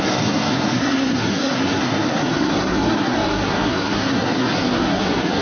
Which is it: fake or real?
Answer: fake